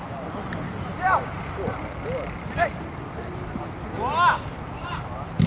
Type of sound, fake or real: real